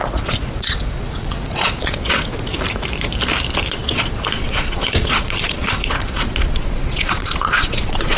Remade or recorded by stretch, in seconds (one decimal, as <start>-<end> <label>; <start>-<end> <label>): 0.0-2.5 remade; 2.5-3.7 recorded; 3.7-8.2 remade